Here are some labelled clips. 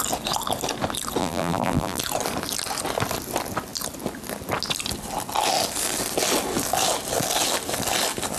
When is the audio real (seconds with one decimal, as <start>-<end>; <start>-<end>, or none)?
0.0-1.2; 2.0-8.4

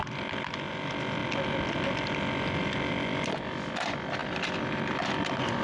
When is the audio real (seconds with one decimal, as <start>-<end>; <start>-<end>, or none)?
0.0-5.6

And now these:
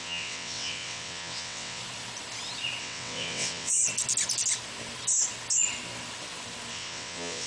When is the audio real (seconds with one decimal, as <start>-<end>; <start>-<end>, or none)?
1.8-2.8; 3.7-6.7

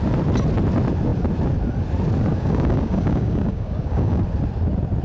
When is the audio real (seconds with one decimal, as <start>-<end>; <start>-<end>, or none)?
0.0-2.3; 4.2-5.0